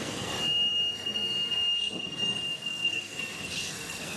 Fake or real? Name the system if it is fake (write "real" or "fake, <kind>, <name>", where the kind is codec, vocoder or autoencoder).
fake, codec, SNAC